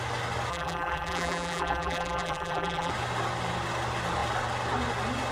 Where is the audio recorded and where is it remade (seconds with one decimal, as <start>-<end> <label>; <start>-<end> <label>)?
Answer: 0.0-0.5 recorded; 0.5-2.9 remade; 2.9-5.3 recorded